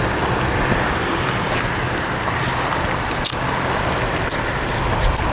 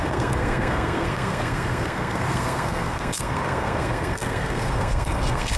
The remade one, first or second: second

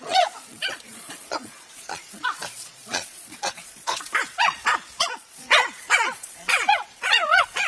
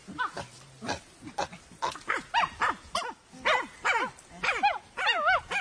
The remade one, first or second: first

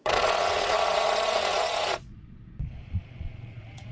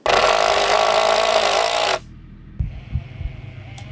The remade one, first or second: first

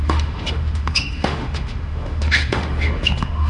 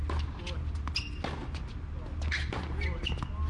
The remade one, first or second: first